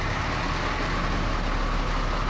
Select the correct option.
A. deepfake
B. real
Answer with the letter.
B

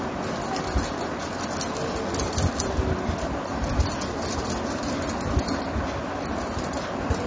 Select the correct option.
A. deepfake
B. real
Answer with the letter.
B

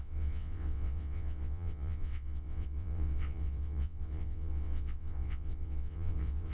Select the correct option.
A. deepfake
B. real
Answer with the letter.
A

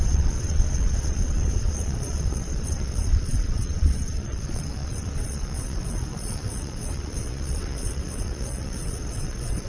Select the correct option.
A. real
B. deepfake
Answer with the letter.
B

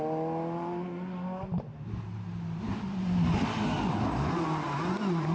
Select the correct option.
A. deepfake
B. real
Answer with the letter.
B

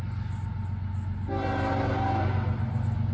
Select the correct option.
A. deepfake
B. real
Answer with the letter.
B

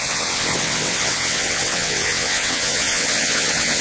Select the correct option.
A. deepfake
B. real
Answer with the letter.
A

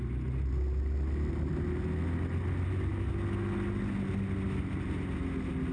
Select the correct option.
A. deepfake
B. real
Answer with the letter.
B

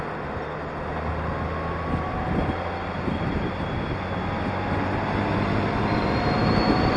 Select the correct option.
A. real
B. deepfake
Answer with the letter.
A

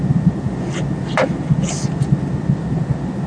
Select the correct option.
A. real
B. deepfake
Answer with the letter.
A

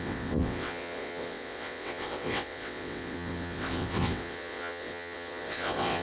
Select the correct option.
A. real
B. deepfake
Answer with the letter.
B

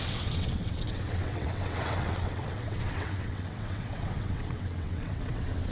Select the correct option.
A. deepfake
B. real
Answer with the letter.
A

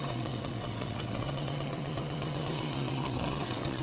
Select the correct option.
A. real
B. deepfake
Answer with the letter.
B